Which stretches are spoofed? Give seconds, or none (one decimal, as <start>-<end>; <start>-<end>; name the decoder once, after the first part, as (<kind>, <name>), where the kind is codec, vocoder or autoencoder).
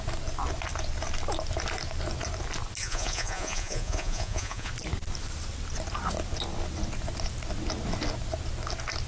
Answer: 2.8-4.7 (vocoder, Vocos)